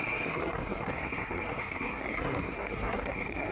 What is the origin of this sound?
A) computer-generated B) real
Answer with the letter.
A